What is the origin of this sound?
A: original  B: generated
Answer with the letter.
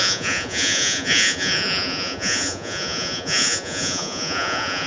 B